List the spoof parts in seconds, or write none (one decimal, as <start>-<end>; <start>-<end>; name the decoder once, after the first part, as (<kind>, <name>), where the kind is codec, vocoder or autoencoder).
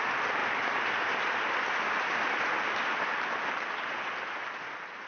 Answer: none